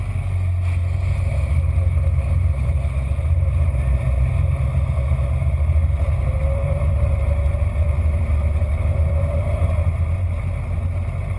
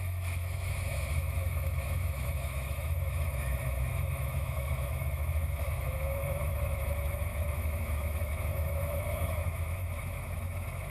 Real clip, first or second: first